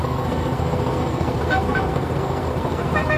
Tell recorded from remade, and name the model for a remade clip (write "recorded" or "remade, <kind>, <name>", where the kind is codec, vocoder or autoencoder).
remade, codec, SNAC